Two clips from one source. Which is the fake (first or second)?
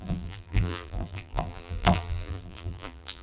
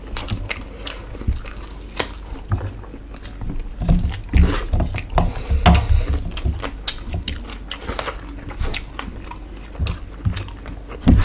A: first